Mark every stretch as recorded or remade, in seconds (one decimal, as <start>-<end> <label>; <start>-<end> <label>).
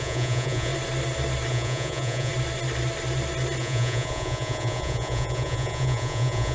0.0-0.7 remade; 0.7-1.5 recorded; 1.5-2.3 remade; 2.3-3.6 recorded; 3.6-6.5 remade